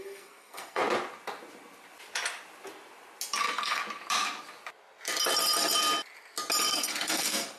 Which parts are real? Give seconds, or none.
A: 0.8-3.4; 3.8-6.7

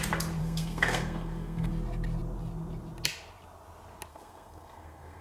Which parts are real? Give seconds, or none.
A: 0.0-0.4; 1.7-4.1

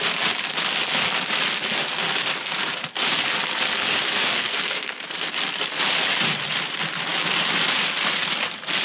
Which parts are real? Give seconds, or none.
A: 0.0-4.3; 5.0-8.8

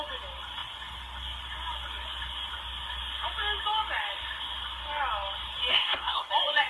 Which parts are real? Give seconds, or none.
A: 0.0-5.7; 6.3-6.7

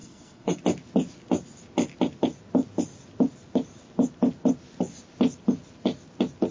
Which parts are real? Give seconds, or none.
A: 0.6-6.5

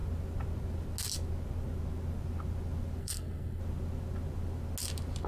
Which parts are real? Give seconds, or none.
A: 0.0-3.0; 3.6-5.3

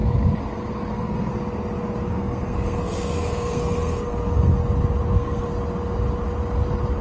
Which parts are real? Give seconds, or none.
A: 0.0-0.9; 1.3-2.1; 4.6-5.1; 5.5-7.0

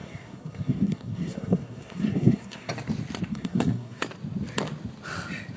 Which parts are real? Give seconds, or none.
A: 2.7-3.3; 4.0-5.6